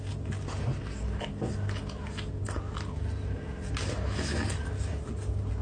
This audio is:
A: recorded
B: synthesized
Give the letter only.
A